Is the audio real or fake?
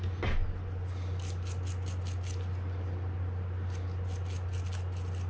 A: real